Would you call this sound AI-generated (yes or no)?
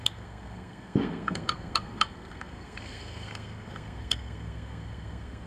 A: yes